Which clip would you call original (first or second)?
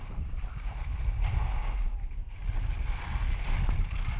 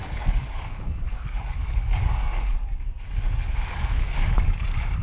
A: first